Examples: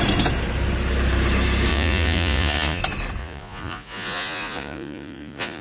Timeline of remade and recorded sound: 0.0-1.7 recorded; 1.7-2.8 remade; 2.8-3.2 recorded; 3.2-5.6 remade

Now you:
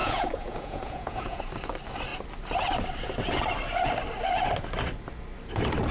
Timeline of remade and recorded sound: 0.0-1.4 remade; 1.4-5.9 recorded

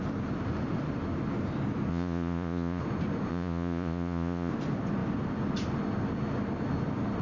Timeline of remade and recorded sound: 0.0-1.9 recorded; 1.9-2.8 remade; 2.8-3.3 recorded; 3.3-4.5 remade; 4.5-7.2 recorded

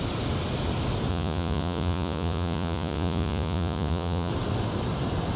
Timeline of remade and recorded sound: 0.0-1.1 recorded; 1.1-4.3 remade; 4.3-5.4 recorded

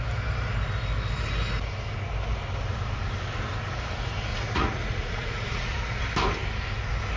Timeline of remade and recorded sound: 0.0-4.3 recorded; 4.3-6.0 remade; 6.0-7.2 recorded

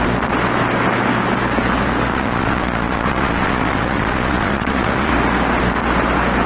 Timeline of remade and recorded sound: 0.0-2.1 recorded; 2.1-5.1 remade; 5.1-6.5 recorded

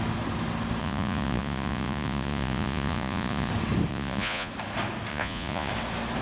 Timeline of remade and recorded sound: 0.0-0.8 recorded; 0.8-3.5 remade; 3.5-3.9 recorded; 3.9-4.5 remade; 4.5-5.1 recorded; 5.1-5.7 remade; 5.7-6.2 recorded

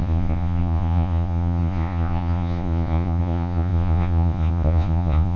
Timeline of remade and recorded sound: 0.0-5.4 remade